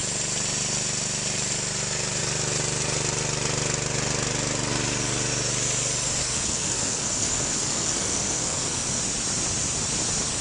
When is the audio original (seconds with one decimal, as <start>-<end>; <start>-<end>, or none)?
0.0-6.2; 9.0-10.4